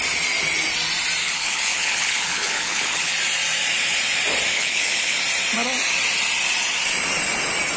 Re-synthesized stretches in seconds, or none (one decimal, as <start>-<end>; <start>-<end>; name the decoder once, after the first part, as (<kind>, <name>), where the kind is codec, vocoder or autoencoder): 1.2-3.1 (codec, HILCodec); 4.5-5.2